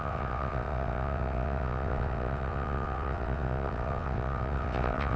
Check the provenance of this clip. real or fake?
fake